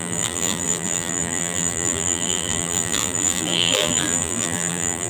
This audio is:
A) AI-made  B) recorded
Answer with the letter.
A